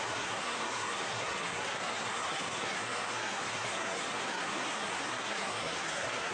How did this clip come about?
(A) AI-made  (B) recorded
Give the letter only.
A